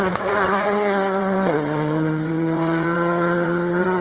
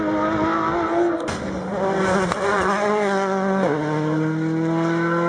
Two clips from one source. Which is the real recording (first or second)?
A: second